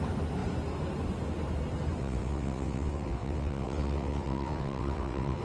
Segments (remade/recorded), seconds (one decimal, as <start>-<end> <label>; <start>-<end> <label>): 0.0-2.0 recorded; 2.0-5.4 remade